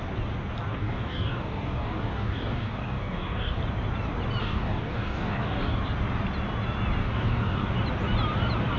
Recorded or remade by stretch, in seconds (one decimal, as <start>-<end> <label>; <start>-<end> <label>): 0.0-0.7 recorded; 0.7-3.6 remade; 3.6-4.4 recorded; 4.4-5.8 remade; 5.8-7.0 recorded; 7.0-7.7 remade; 7.7-8.8 recorded